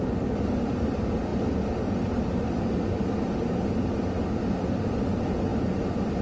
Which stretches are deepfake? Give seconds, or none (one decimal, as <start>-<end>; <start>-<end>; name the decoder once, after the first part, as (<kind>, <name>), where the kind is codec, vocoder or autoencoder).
none